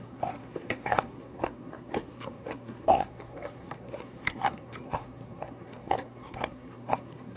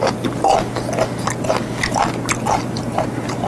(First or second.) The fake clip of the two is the first